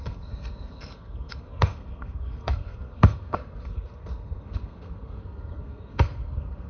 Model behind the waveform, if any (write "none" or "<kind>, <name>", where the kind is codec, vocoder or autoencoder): codec, SNAC